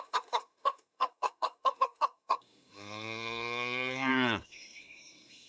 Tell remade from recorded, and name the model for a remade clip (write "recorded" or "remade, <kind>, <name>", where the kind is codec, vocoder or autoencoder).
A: remade, codec, SNAC